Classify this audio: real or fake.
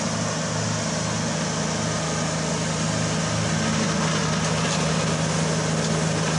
real